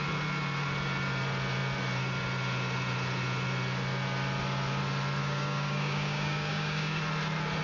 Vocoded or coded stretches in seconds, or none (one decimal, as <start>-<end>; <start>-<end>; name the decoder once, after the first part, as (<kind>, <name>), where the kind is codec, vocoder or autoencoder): 5.2-7.0 (codec, DAC)